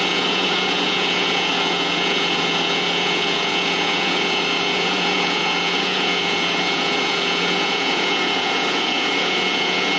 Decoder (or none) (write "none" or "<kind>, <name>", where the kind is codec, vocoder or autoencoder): vocoder, Vocos